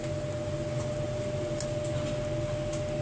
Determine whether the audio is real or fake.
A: real